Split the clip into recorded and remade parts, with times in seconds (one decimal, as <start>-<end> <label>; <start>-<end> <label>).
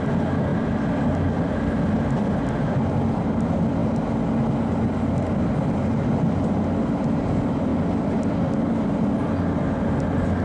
0.0-10.4 recorded